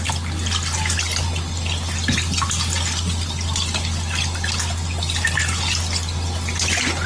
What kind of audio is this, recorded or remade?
recorded